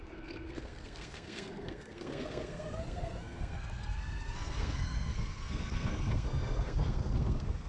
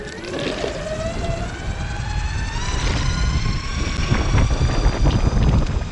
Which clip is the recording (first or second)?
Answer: second